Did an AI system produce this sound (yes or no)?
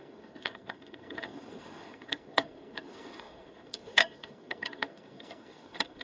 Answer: yes